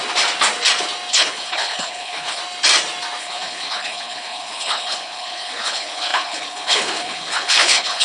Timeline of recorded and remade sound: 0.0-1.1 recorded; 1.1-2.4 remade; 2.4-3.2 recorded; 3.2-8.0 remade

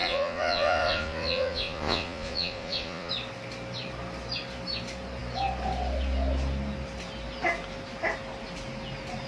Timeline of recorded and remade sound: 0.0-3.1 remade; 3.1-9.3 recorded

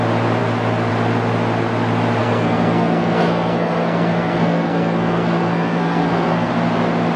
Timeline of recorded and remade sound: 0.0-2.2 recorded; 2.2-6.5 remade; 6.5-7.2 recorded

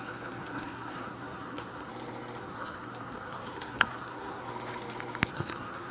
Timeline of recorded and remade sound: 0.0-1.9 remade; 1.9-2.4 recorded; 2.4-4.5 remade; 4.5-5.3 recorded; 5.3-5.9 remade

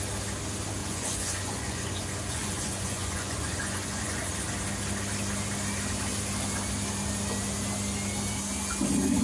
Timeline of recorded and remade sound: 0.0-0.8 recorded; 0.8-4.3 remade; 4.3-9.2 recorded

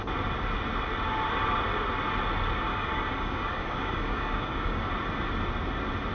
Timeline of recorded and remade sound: 0.0-2.7 recorded; 2.7-4.9 remade; 4.9-6.1 recorded